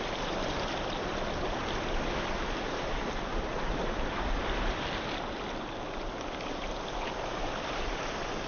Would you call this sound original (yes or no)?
yes